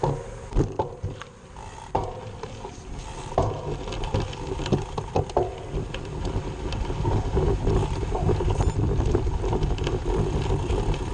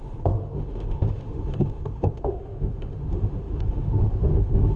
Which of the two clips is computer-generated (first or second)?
second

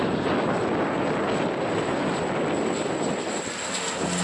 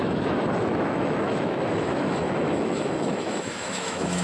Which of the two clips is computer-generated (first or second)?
second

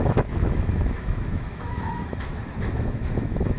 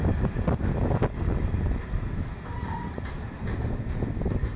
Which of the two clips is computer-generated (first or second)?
first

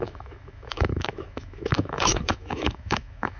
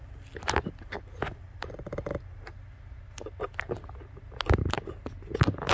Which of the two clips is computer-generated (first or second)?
first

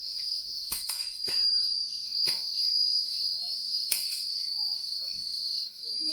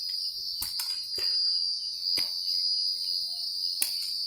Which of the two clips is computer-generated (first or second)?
first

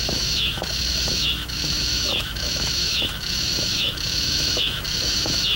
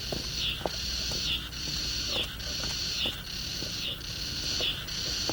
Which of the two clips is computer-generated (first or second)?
first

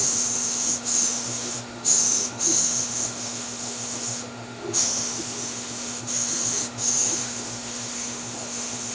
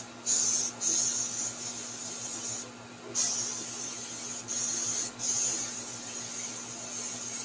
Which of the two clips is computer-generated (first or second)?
first